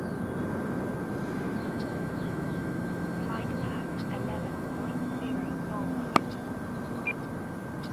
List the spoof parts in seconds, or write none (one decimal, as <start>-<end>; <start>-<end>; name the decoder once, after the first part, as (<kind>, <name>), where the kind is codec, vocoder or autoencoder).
1.6-5.2 (autoencoder, DAC-VAE)